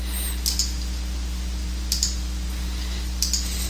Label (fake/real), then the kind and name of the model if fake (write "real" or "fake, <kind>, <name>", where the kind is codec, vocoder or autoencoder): real